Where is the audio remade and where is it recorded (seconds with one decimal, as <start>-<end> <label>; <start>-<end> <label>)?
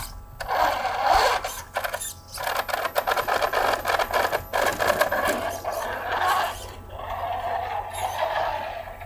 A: 0.0-9.1 recorded